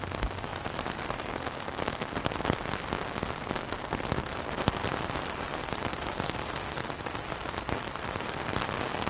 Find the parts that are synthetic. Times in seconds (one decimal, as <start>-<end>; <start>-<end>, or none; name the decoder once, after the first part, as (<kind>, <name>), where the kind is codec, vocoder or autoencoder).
none